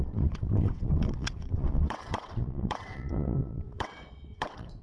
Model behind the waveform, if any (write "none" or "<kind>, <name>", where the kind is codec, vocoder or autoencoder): vocoder, WaveNeXt